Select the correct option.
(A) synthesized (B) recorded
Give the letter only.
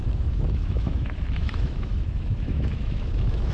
A